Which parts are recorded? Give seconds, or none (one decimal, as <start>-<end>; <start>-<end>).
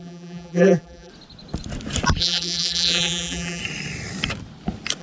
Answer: 1.1-2.2; 3.6-5.0